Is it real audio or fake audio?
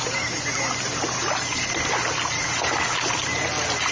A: real